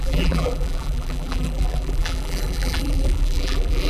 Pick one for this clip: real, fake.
fake